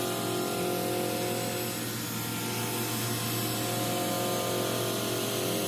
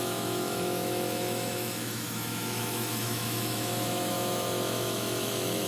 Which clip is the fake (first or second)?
second